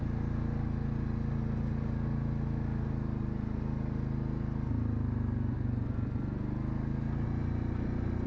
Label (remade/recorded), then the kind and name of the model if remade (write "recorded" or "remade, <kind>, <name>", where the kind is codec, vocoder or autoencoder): recorded